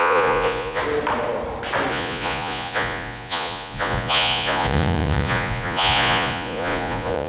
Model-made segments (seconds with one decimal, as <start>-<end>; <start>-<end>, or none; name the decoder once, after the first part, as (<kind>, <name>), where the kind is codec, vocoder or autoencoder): 0.0-0.8 (vocoder, Vocos); 1.9-7.3